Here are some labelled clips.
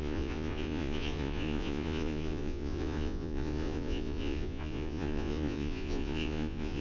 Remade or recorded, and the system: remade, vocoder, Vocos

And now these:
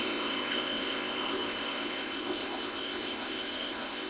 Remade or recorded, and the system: remade, codec, ZipCodec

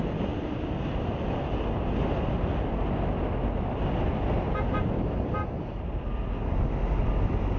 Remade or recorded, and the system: recorded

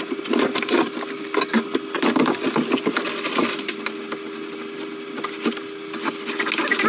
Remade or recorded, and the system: recorded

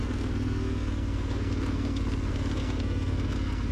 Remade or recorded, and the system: remade, codec, SNAC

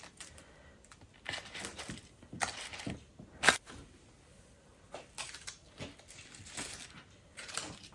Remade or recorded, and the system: recorded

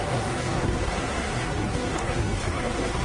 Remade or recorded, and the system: remade, codec, SNAC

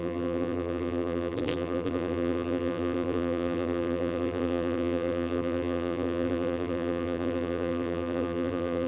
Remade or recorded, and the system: remade, vocoder, BigVGAN v2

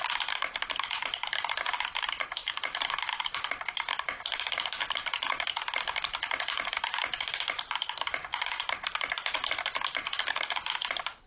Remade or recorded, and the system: remade, vocoder, BigVGAN v2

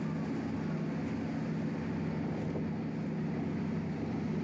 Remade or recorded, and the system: recorded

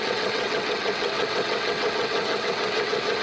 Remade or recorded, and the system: remade, vocoder, WaveNeXt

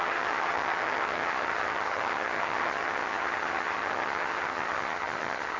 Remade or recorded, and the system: remade, vocoder, HiFi-GAN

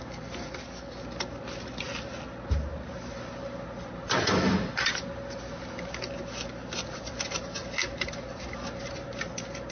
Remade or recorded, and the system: recorded